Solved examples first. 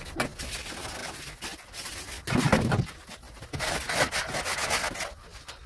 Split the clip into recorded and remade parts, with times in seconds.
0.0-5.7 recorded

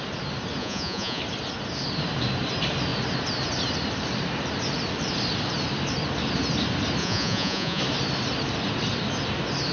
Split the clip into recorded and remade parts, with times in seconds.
0.0-0.6 recorded; 0.6-1.2 remade; 1.2-7.0 recorded; 7.0-7.8 remade; 7.8-9.7 recorded